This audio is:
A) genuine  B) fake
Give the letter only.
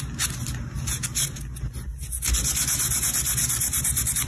A